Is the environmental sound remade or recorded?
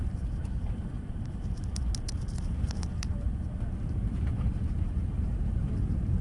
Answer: remade